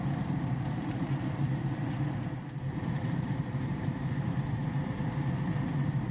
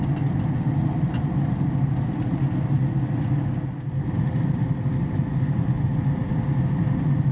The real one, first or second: second